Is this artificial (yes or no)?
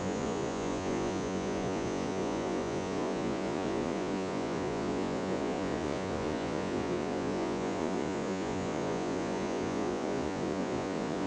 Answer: yes